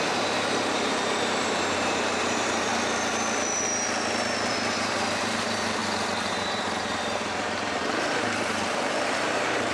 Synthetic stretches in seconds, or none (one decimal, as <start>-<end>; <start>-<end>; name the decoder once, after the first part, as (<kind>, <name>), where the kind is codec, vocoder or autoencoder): 0.0-2.7 (vocoder, BigVGAN v2); 4.5-5.8; 6.3-9.7